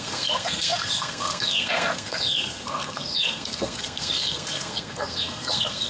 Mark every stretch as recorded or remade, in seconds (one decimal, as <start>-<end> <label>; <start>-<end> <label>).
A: 0.0-5.9 remade